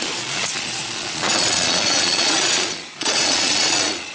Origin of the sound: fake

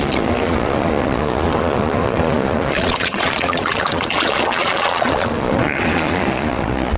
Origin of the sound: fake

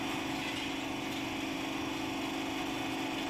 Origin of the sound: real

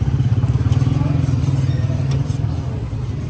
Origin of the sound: real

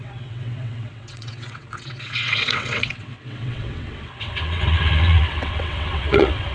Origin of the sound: fake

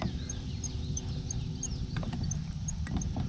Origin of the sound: real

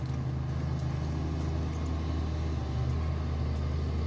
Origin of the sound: real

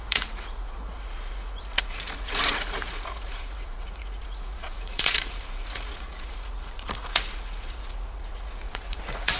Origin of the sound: fake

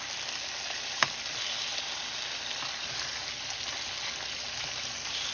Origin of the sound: real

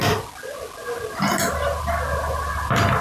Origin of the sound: real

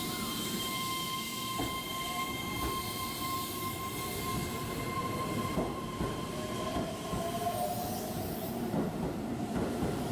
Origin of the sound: fake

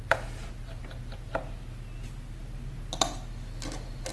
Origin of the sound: real